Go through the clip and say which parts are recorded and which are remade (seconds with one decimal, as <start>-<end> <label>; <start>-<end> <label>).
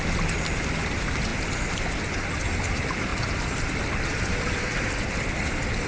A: 0.0-1.3 remade; 1.3-2.6 recorded; 2.6-5.9 remade